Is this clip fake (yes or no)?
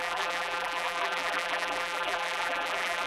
yes